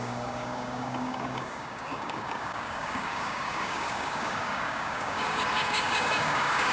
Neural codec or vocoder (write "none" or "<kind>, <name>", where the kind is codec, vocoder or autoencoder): codec, DAC